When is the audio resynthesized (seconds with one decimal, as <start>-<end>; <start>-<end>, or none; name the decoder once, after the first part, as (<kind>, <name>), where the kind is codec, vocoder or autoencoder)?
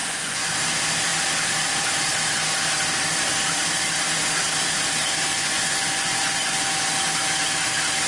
0.0-0.5 (vocoder, Vocos); 5.3-6.7